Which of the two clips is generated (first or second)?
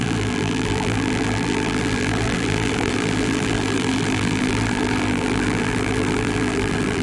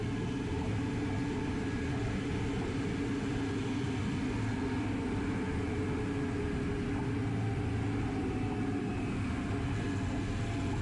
first